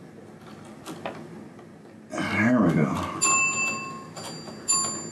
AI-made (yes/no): no